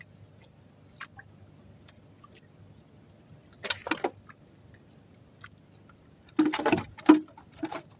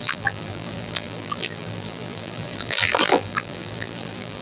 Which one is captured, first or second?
first